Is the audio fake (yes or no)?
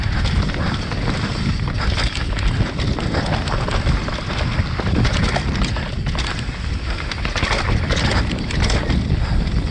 no